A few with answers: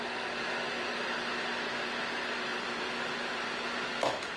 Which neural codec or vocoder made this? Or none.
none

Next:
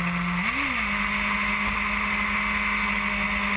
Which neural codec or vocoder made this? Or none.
none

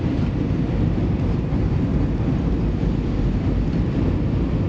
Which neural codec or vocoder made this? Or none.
none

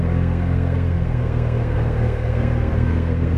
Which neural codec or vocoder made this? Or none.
codec, SNAC